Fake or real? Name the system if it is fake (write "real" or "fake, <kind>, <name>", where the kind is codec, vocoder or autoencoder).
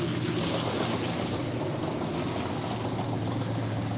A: real